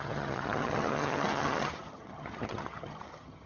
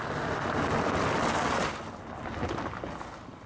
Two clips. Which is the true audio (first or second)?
second